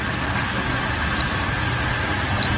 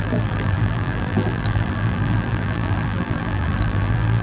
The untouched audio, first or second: first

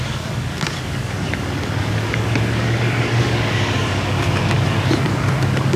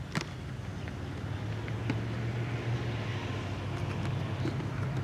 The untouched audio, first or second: second